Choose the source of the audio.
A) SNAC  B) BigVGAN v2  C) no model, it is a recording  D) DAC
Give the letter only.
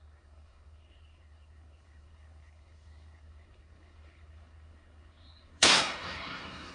A